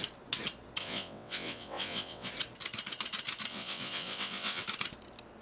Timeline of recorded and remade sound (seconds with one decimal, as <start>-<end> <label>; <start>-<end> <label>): 0.0-0.8 recorded; 0.8-2.3 remade; 2.3-3.5 recorded; 3.5-4.6 remade; 4.6-5.4 recorded